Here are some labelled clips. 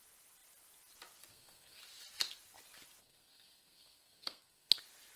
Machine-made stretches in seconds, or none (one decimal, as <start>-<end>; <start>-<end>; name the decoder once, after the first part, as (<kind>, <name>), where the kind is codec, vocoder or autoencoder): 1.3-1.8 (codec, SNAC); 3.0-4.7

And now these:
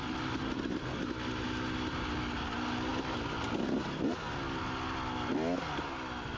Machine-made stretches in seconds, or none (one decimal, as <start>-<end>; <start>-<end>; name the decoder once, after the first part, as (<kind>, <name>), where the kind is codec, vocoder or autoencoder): none

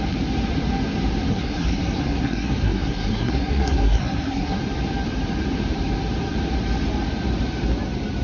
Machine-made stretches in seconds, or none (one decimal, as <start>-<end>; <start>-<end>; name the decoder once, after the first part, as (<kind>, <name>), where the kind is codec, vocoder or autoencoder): 1.3-4.6 (codec, SNAC)

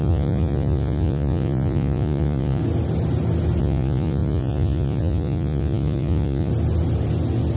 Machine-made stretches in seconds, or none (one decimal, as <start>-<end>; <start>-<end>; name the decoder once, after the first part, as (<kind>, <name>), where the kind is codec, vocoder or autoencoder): 0.0-2.6 (vocoder, Vocos); 3.6-6.5

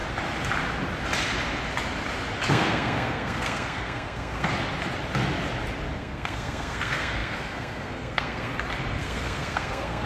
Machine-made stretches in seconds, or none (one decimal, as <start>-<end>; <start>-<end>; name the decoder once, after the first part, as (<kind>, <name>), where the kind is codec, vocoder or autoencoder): 2.5-4.5 (codec, SNAC); 5.9-8.5; 9.0-10.1